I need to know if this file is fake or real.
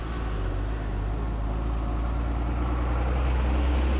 real